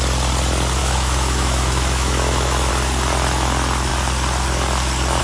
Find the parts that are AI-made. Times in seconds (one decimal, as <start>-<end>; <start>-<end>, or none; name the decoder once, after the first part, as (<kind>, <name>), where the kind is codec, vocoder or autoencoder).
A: 0.8-2.7 (autoencoder, DAC-VAE)